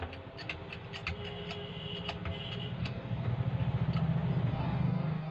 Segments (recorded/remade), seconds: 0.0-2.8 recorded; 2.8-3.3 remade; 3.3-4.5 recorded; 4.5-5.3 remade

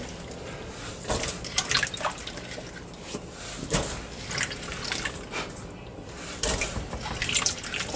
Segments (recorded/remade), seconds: 0.0-3.5 recorded; 3.5-4.3 remade; 4.3-8.0 recorded

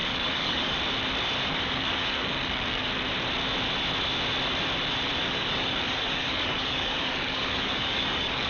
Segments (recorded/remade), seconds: 0.0-0.8 remade; 0.8-1.5 recorded; 1.5-2.9 remade; 2.9-5.2 recorded; 5.2-8.5 remade

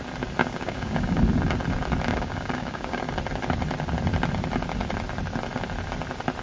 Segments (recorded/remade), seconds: 0.0-0.4 recorded; 0.4-1.2 remade; 1.2-2.1 recorded; 2.1-3.0 remade; 3.0-6.4 recorded

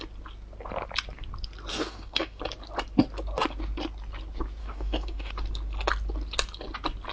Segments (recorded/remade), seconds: 0.0-1.7 recorded; 1.7-2.4 remade; 2.4-4.6 recorded; 4.6-5.3 remade; 5.3-7.1 recorded

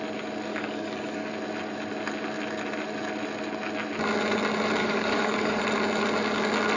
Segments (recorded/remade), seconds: 0.0-0.5 recorded; 0.5-1.3 remade; 1.3-4.8 recorded; 4.8-5.6 remade; 5.6-6.8 recorded

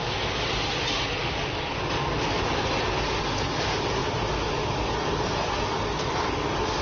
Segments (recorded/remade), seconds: 0.0-6.8 recorded